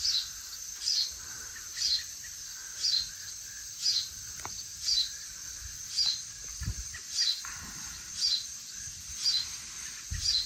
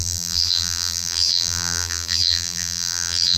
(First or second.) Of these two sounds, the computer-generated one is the second